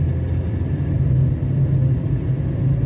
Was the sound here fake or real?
real